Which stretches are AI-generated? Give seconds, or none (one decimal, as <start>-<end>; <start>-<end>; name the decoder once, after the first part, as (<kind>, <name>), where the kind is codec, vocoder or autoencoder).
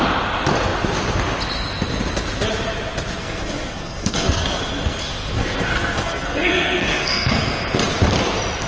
3.2-7.6 (codec, SNAC)